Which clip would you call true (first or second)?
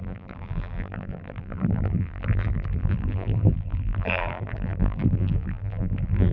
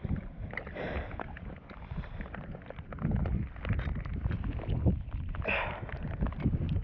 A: second